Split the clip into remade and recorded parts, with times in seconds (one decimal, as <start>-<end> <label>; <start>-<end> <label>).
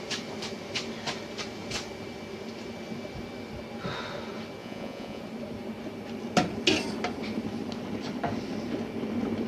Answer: 0.0-4.6 recorded; 4.6-5.2 remade; 5.2-9.5 recorded